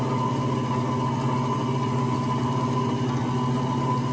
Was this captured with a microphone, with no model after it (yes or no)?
yes